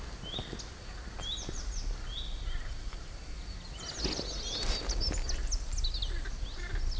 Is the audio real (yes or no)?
yes